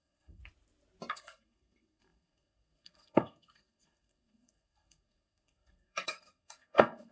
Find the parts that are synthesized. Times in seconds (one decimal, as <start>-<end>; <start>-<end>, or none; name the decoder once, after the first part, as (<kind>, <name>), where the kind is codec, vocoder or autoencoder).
0.0-0.4 (codec, SNAC); 1.1-7.1